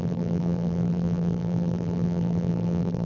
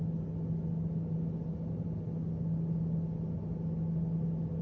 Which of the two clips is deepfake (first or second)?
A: first